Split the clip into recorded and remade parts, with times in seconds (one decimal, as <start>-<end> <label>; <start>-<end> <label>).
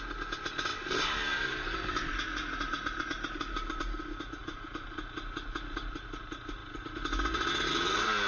0.0-0.7 recorded; 0.7-3.8 remade; 3.8-4.4 recorded; 4.4-5.0 remade; 5.0-8.3 recorded